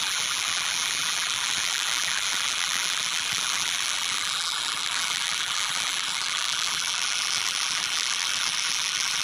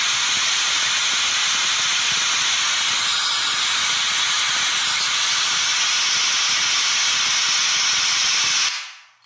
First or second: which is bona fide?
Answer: second